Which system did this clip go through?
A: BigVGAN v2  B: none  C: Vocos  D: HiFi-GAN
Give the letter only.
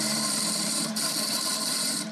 A